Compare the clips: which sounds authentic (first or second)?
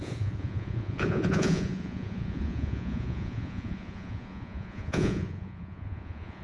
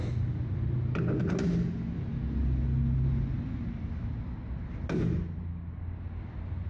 second